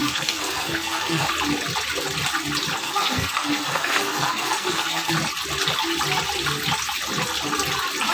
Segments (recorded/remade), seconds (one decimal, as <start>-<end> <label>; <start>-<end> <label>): 0.0-1.3 remade; 1.3-2.8 recorded; 2.8-5.1 remade; 5.1-8.1 recorded